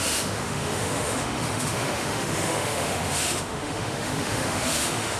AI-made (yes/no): yes